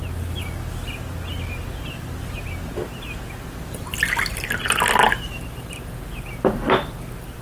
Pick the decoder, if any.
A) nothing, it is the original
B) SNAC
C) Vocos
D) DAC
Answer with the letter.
A